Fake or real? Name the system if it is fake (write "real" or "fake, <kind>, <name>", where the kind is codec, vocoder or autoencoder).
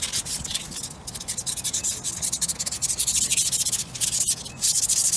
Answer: real